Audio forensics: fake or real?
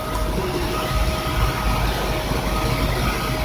real